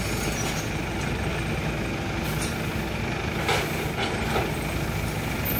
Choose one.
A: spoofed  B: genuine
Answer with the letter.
B